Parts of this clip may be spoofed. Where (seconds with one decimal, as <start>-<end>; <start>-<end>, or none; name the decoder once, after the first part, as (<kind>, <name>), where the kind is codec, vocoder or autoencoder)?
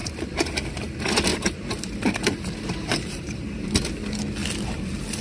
1.3-3.7 (vocoder, BigVGAN v2)